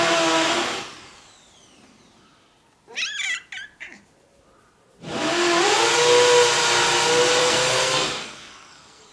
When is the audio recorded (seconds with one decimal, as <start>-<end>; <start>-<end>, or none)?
0.0-7.4